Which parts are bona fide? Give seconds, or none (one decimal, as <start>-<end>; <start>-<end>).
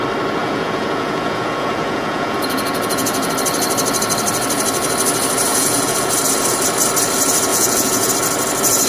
0.0-0.4; 3.3-5.5; 6.1-7.5; 8.1-8.9